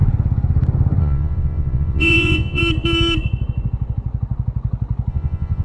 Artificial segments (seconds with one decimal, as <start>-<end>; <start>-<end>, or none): 1.0-2.6; 5.1-5.6